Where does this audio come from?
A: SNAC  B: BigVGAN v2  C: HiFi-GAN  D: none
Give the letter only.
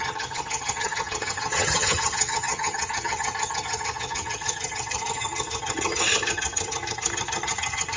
C